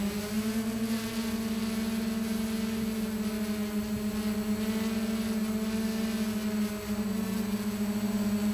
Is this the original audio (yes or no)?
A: yes